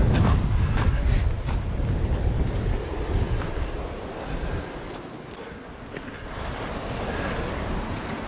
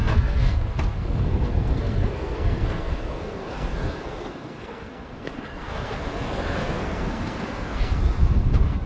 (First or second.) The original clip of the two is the first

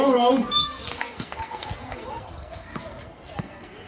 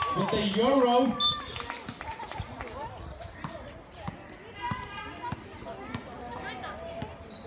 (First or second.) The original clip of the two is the second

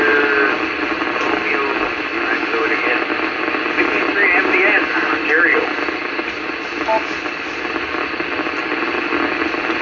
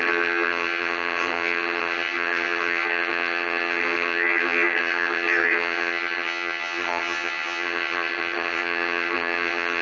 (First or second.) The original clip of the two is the first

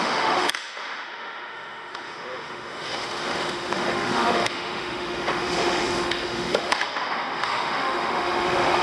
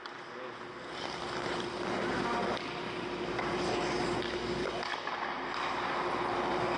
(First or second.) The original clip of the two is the second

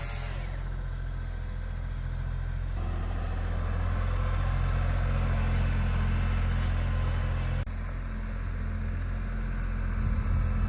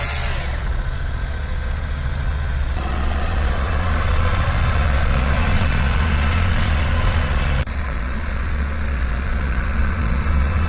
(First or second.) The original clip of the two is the first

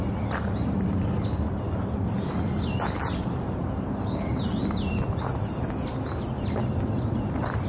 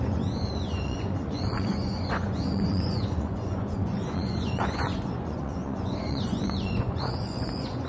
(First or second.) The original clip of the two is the first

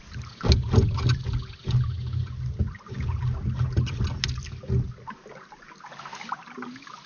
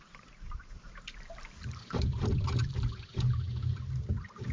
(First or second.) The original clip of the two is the first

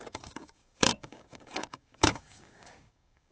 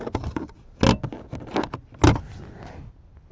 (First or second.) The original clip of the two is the second